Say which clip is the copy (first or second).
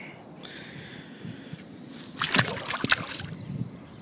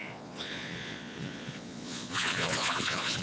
second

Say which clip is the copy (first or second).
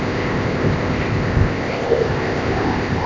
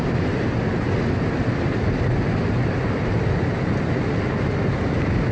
first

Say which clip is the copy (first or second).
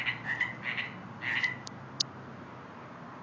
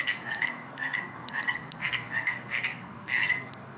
second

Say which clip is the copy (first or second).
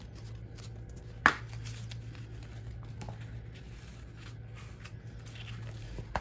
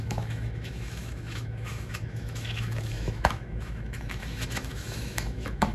second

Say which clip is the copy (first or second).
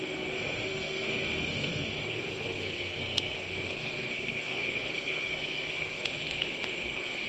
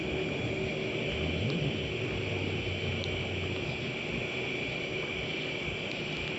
first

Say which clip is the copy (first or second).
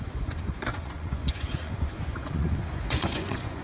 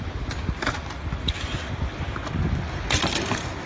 first